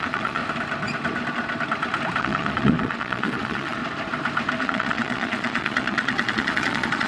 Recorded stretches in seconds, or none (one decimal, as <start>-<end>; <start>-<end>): 0.4-2.2; 3.8-4.6